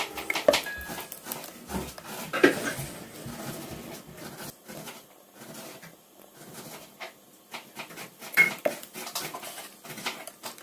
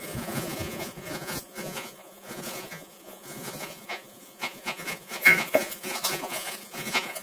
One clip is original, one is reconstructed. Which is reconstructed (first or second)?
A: second